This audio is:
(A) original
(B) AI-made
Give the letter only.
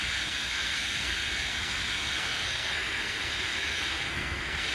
B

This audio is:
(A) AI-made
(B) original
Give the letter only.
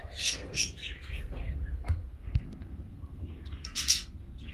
A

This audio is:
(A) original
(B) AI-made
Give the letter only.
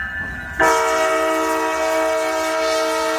A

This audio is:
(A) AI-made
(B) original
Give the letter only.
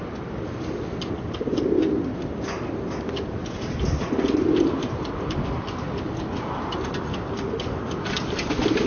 B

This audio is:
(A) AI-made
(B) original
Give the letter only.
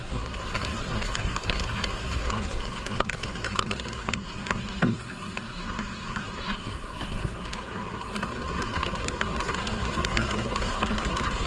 A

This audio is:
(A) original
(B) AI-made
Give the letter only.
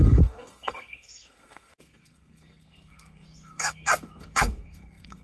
B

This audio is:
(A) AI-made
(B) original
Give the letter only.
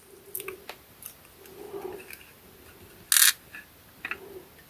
B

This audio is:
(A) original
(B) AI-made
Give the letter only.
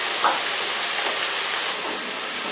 A